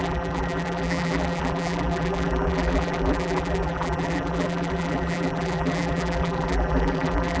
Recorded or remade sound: remade